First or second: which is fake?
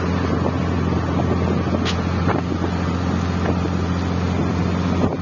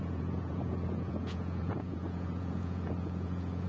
second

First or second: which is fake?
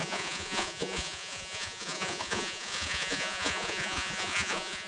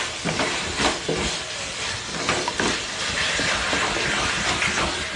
first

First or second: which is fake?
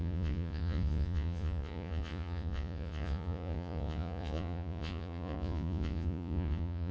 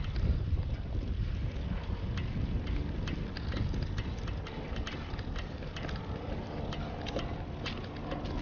first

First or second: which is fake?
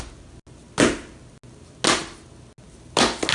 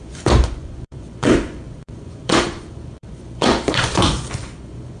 second